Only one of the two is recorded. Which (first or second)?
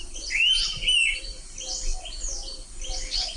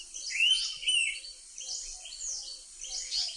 first